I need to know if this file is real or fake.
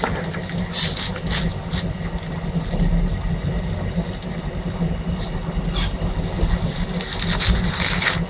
real